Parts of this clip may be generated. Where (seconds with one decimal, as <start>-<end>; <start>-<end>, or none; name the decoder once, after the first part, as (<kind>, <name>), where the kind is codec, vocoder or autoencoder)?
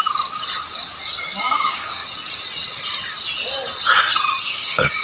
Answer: 1.4-2.0 (codec, DAC); 4.4-5.0